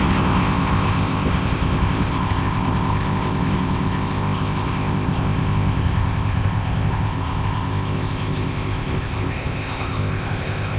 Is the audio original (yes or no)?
no